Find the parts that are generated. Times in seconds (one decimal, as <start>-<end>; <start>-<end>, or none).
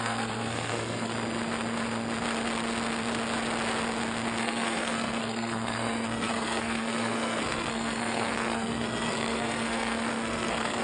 0.0-1.1; 4.4-10.8